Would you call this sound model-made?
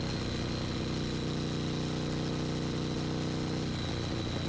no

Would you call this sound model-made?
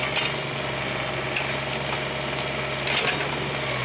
no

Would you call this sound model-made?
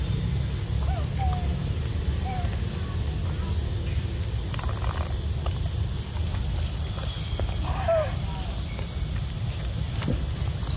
no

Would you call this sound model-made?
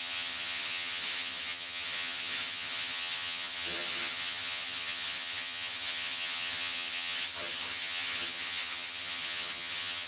yes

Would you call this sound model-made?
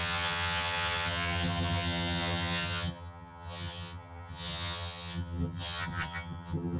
yes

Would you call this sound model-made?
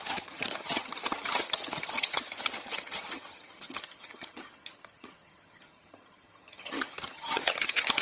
yes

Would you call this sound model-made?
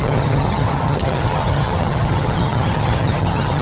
yes